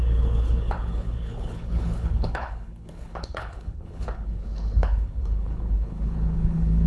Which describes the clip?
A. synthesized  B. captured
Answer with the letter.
A